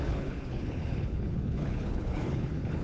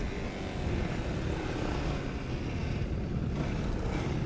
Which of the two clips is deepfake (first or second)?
first